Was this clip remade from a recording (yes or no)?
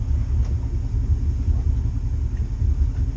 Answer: no